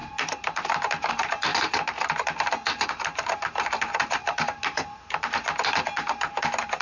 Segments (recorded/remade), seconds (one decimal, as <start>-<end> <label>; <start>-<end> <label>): 0.0-1.5 recorded; 1.5-4.6 remade; 4.6-6.8 recorded